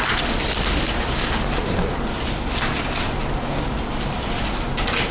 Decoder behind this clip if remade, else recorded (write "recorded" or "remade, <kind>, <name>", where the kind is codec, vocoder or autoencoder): recorded